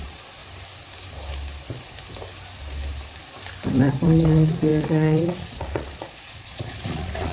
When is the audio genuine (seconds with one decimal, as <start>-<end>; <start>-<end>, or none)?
0.4-3.8